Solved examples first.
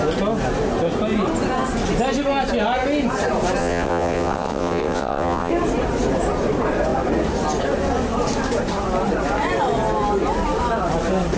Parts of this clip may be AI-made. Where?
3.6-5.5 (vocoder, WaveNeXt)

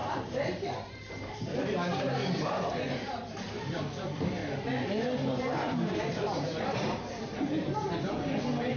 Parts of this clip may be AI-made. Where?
0.0-4.4 (vocoder, BigVGAN v2); 6.0-8.8

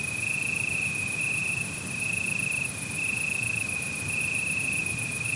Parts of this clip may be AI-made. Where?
none

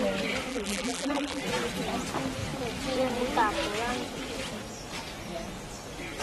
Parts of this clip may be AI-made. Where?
0.5-1.4 (vocoder, BigVGAN v2)

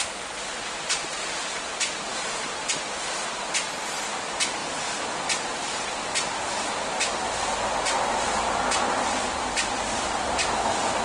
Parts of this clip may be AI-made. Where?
none

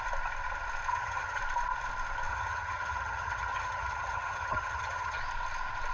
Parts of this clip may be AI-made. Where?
0.9-1.4 (vocoder, HiFi-GAN); 2.3-5.2

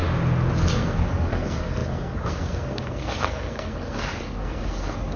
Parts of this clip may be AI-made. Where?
0.7-5.2 (codec, SNAC)

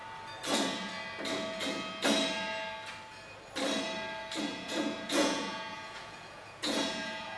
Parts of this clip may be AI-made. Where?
4.4-7.4 (vocoder, Vocos)